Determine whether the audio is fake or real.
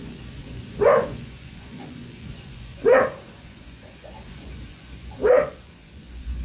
fake